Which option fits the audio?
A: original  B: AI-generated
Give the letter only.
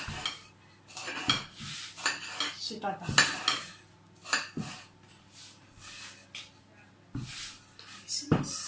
A